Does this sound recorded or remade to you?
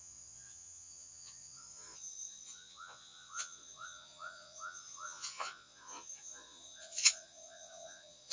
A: remade